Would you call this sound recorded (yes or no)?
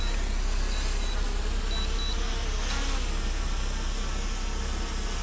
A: yes